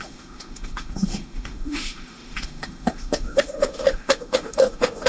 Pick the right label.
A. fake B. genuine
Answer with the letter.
A